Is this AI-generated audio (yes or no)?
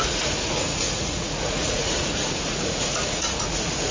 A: yes